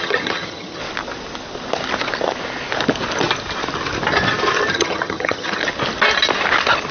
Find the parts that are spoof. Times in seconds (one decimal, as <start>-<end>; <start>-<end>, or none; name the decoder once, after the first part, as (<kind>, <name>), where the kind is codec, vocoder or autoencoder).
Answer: 0.0-0.8 (vocoder, HiFi-GAN); 4.7-5.6